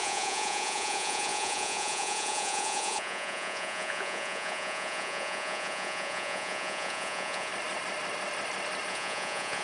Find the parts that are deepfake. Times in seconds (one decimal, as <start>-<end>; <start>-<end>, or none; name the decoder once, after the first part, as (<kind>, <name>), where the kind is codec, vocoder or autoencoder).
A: 0.0-7.5 (vocoder, Vocos); 8.9-9.6